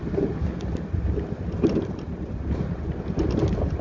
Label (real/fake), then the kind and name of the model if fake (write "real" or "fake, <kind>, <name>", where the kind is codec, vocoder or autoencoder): real